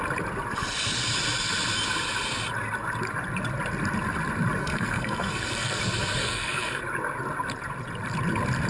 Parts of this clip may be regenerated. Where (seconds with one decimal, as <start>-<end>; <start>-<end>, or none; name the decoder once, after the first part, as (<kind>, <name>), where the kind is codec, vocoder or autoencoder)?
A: 4.6-5.8 (codec, SNAC); 6.2-6.8